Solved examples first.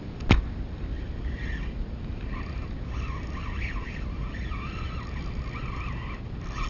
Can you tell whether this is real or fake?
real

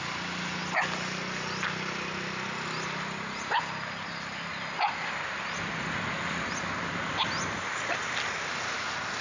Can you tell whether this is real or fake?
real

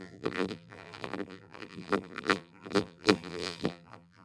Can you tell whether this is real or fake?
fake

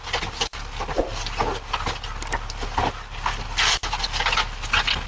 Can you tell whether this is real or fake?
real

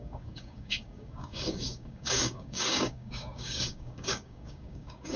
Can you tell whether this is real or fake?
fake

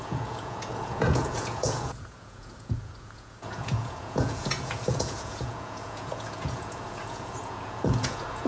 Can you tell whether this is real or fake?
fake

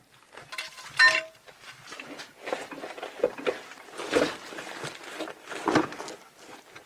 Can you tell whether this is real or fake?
real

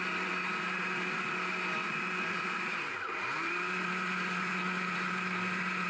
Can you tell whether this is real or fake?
fake